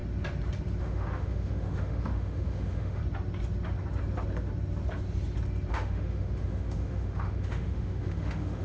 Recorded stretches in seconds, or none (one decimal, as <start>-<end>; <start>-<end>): 0.0-0.8; 3.0-5.7